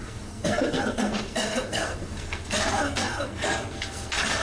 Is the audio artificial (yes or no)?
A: yes